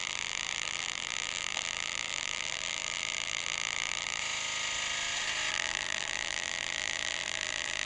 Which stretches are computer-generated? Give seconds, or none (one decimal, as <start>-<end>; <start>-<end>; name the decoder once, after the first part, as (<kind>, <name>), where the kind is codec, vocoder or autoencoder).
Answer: 0.0-4.2 (vocoder, BigVGAN v2); 5.5-7.8